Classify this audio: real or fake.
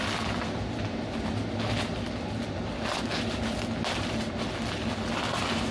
real